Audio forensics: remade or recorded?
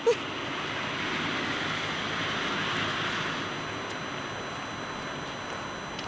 recorded